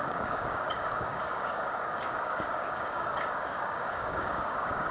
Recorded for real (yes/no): no